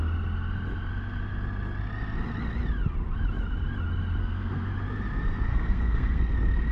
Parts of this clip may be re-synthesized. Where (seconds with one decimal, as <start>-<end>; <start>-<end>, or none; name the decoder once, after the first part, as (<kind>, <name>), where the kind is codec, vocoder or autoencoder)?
4.2-4.7 (codec, SNAC); 5.5-6.2